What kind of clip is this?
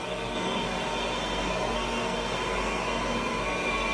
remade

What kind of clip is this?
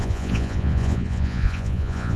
remade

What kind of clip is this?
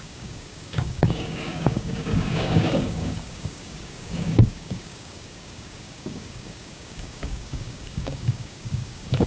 remade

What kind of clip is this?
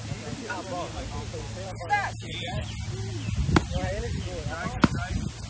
recorded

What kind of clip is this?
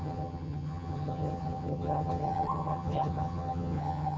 remade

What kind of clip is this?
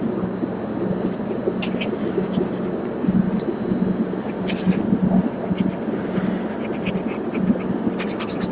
recorded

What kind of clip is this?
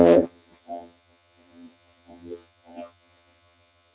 remade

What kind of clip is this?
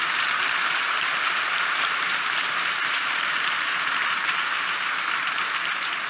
remade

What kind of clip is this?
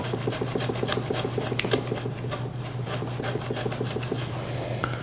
recorded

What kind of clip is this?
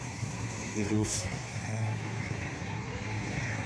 remade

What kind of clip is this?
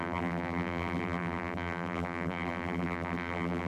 remade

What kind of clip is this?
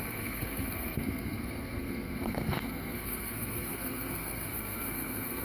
remade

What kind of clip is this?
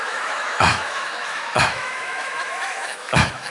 remade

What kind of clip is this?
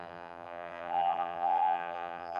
remade